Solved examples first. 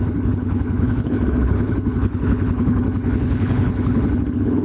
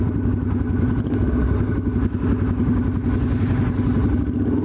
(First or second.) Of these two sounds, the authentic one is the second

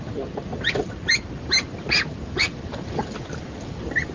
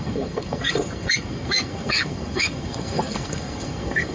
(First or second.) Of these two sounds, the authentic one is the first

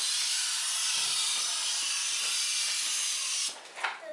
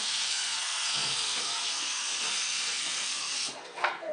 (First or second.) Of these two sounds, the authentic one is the first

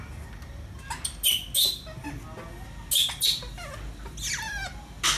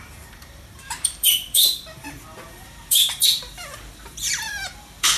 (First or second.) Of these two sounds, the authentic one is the first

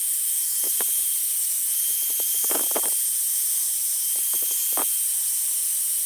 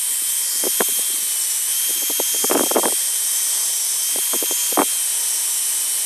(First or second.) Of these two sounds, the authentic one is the second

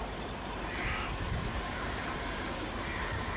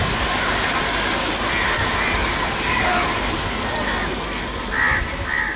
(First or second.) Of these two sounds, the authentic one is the second